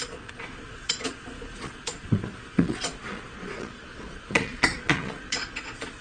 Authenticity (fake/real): fake